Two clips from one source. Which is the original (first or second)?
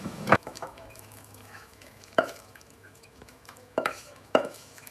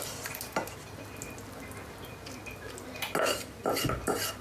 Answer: second